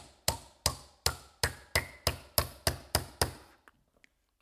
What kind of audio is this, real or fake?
real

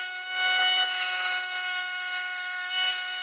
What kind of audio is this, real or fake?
fake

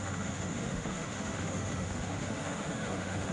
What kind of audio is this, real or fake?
fake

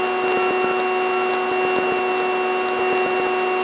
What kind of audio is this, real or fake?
real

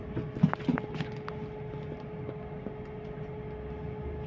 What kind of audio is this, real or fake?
real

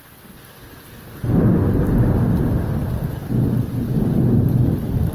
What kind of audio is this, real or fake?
real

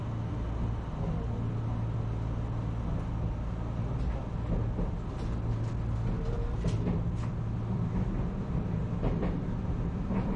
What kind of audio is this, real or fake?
real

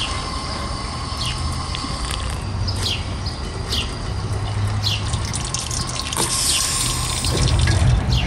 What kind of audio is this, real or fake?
real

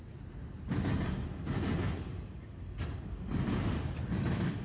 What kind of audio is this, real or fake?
real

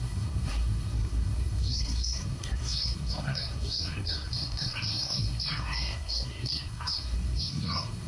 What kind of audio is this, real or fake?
fake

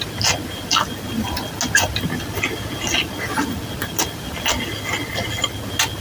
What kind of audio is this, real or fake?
real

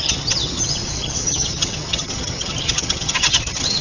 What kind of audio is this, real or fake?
fake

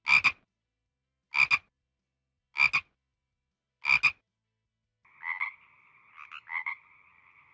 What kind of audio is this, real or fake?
real